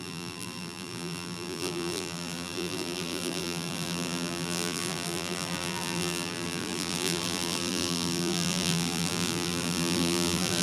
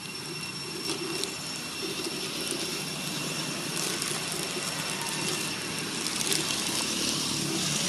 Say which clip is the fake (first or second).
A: first